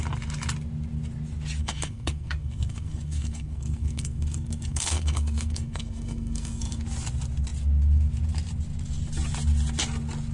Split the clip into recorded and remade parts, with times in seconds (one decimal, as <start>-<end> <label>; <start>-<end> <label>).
0.0-1.6 recorded; 1.6-6.8 remade; 6.8-10.3 recorded